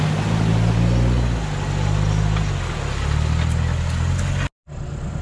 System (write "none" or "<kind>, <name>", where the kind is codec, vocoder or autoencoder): none